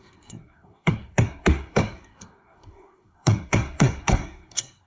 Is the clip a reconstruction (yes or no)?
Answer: yes